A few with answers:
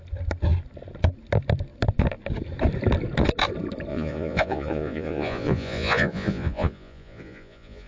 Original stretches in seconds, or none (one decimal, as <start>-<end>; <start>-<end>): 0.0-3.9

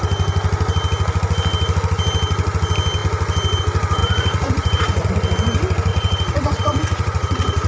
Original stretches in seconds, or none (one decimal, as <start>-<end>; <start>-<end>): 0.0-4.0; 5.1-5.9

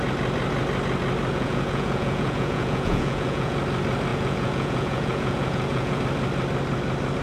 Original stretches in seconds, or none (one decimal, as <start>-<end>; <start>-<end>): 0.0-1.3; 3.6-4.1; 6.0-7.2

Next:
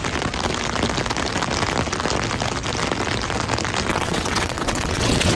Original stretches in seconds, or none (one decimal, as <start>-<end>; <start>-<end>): 0.0-3.9

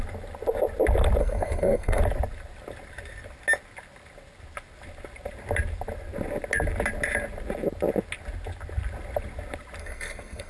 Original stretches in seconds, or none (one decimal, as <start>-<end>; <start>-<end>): 0.0-1.2; 2.0-9.8

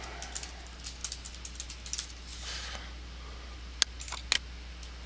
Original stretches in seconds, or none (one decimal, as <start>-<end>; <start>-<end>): 0.0-5.1